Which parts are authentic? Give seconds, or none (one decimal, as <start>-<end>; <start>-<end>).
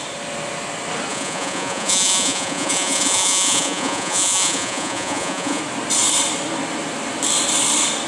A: 0.0-1.1; 5.6-8.1